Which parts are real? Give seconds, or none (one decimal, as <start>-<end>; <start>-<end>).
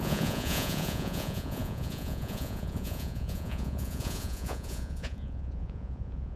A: none